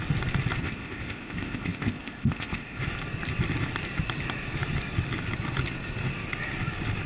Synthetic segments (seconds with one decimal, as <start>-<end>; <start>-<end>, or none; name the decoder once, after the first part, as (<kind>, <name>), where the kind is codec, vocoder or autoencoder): 0.6-2.8 (codec, ZipCodec)